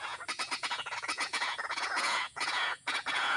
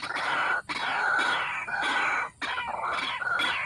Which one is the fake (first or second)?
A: first